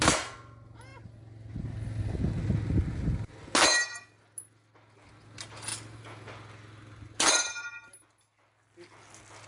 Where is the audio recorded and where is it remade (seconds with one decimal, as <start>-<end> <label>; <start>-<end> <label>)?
0.0-9.5 recorded